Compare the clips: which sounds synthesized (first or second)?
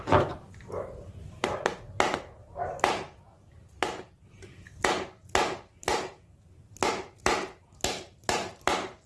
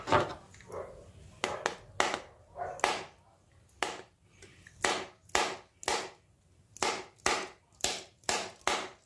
first